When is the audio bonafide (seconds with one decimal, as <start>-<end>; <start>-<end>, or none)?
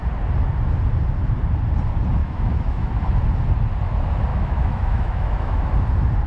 0.0-2.2; 2.9-4.3; 5.7-6.3